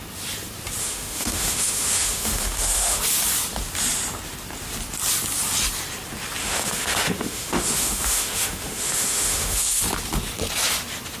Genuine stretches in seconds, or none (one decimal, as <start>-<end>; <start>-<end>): 0.0-0.8; 3.0-6.4; 9.8-11.2